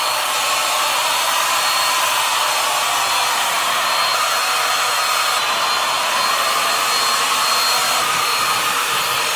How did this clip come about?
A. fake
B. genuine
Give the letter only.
B